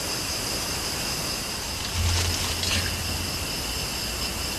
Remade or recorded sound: recorded